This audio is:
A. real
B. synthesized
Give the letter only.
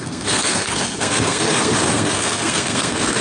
B